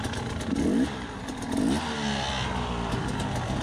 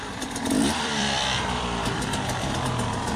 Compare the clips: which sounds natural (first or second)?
first